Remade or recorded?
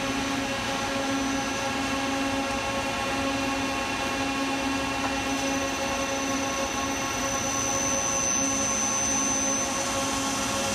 recorded